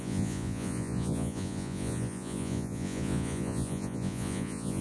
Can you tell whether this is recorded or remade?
remade